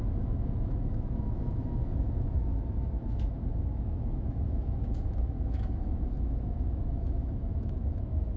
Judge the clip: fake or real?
fake